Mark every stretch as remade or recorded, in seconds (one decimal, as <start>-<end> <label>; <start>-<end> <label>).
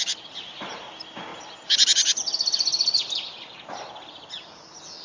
0.0-5.0 recorded